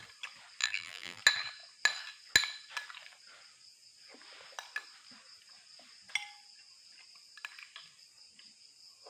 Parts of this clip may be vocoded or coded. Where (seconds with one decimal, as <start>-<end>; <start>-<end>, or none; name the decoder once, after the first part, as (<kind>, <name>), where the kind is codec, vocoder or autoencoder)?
0.6-1.2 (vocoder, BigVGAN v2)